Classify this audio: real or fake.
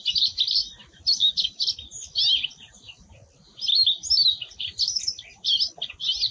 real